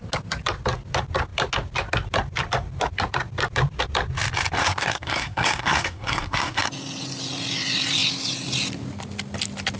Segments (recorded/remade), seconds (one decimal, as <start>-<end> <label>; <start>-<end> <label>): 0.0-4.6 recorded; 4.6-6.7 remade; 6.7-9.8 recorded